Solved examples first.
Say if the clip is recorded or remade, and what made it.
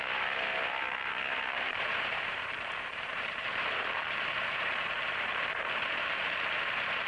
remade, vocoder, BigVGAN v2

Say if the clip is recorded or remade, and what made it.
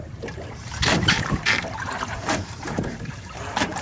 remade, vocoder, BigVGAN v2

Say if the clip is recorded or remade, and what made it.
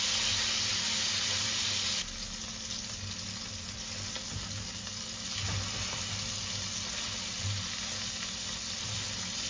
recorded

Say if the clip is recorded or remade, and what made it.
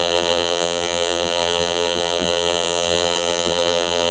remade, vocoder, BigVGAN v2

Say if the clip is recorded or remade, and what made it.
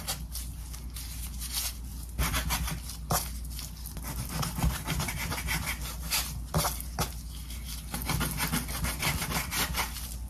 recorded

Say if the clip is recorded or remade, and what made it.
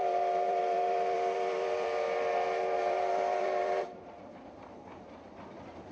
remade, vocoder, BigVGAN v2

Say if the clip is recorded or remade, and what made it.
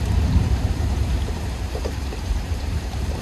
remade, vocoder, BigVGAN v2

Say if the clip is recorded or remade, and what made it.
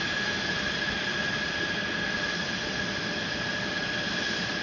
remade, vocoder, BigVGAN v2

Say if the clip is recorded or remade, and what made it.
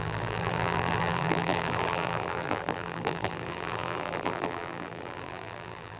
remade, vocoder, BigVGAN v2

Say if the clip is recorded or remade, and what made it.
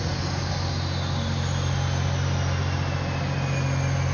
recorded